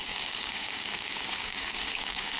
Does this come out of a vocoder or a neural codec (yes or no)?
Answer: yes